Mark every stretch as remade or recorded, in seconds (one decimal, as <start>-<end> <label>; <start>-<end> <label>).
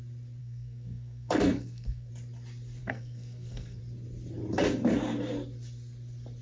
0.0-0.4 recorded; 0.4-2.1 remade; 2.1-2.8 recorded; 2.8-3.8 remade; 3.8-6.4 recorded